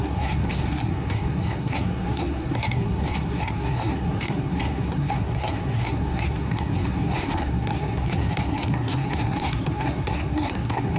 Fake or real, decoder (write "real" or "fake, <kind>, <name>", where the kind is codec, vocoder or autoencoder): fake, codec, SNAC